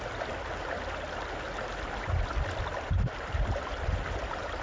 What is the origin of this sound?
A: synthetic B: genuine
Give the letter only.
B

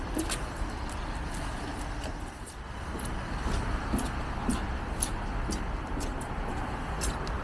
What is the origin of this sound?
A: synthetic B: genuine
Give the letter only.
B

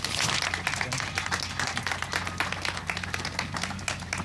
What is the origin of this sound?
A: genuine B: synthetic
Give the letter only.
A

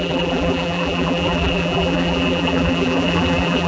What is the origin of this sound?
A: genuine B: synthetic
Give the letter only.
B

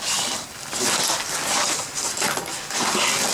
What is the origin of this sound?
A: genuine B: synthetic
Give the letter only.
A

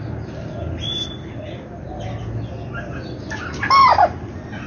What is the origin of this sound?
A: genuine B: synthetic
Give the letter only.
A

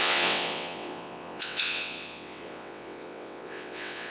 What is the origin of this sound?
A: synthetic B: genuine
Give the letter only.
A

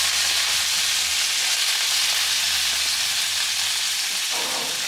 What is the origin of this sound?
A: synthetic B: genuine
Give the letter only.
B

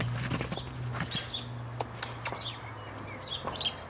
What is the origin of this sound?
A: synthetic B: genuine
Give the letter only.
B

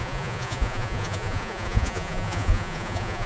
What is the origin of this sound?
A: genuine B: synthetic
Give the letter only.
B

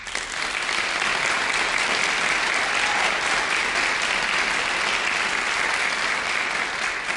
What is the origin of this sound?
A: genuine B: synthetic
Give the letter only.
A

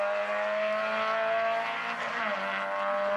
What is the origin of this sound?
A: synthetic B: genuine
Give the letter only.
B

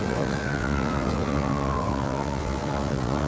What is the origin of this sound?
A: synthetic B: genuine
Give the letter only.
A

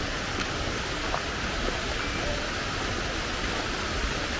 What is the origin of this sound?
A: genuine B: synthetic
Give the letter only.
A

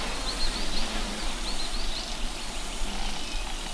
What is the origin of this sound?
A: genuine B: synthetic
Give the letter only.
A